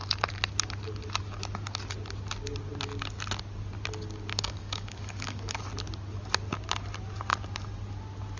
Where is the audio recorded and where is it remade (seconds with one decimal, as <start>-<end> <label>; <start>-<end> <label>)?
0.0-4.3 recorded; 4.3-5.6 remade; 5.6-8.4 recorded